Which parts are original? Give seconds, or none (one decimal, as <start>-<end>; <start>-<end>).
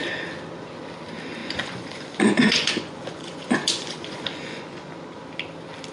0.0-1.4; 4.9-5.9